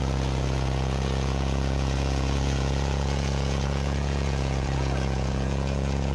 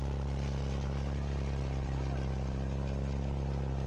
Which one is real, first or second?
second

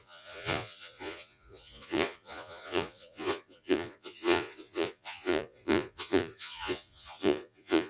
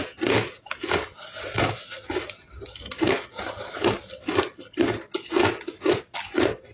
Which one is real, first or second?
second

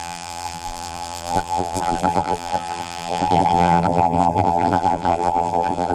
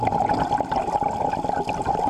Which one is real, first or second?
second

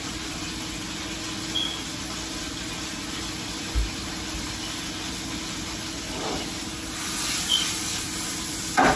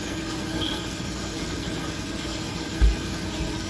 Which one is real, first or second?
first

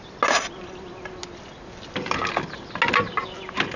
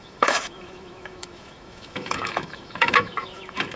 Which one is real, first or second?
first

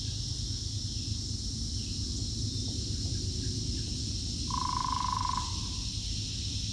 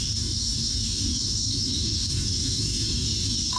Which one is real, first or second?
first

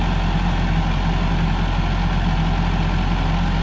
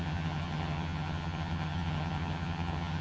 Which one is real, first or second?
first